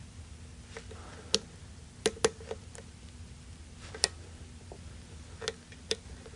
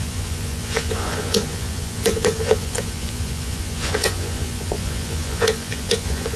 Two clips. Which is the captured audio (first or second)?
first